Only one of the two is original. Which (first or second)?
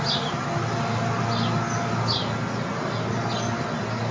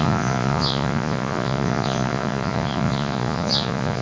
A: first